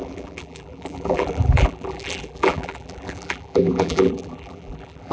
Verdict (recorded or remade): remade